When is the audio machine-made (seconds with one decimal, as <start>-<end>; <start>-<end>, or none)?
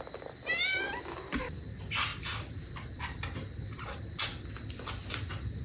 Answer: 2.1-3.0